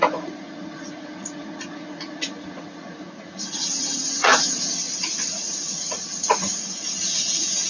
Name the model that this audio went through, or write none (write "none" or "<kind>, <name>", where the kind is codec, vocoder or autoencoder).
vocoder, Vocos